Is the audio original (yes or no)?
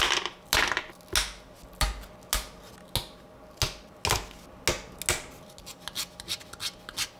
yes